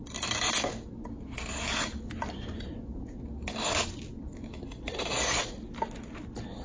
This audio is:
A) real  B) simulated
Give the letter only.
A